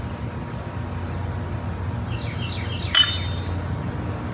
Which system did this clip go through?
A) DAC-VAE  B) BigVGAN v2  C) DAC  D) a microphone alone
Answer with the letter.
D